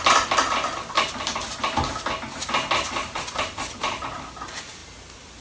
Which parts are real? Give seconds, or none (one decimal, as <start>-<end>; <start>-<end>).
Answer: 0.0-5.4